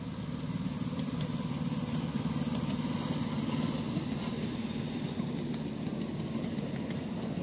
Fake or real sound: real